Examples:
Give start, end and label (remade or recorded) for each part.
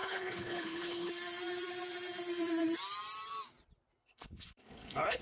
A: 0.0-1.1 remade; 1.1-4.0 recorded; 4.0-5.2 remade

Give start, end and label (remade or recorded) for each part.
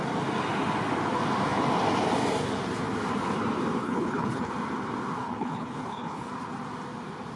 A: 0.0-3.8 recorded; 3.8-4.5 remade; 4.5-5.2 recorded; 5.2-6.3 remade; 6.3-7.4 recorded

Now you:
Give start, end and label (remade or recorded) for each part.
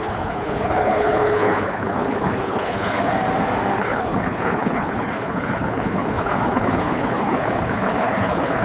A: 0.0-3.1 remade; 3.1-3.7 recorded; 3.7-8.6 remade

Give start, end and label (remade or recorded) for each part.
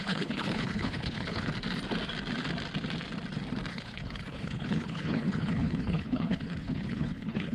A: 0.0-1.5 remade; 1.5-3.7 recorded; 3.7-7.5 remade